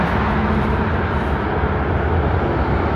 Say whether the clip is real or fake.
real